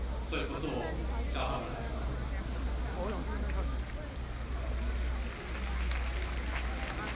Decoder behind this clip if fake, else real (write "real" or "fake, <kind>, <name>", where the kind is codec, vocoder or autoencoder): real